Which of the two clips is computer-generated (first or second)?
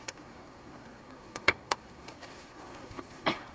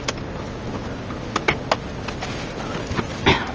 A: first